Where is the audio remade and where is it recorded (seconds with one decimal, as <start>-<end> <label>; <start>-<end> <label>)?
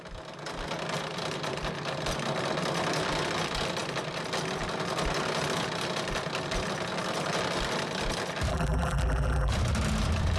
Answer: 0.0-8.5 recorded; 8.5-9.5 remade; 9.5-10.4 recorded